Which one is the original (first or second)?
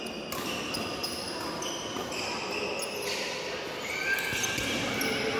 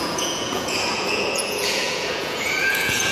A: first